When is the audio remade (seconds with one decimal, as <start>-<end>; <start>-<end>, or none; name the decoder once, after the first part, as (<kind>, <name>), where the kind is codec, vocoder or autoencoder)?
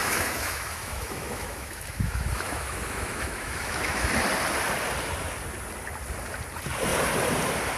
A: 0.0-4.1 (autoencoder, DAC-VAE)